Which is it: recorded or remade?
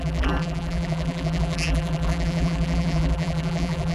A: remade